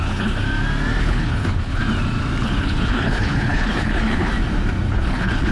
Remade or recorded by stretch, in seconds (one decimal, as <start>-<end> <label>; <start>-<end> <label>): 0.0-0.4 remade; 0.4-1.0 recorded; 1.0-1.8 remade; 1.8-2.4 recorded; 2.4-4.3 remade; 4.3-4.9 recorded; 4.9-5.5 remade